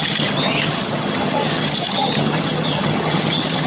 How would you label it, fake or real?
fake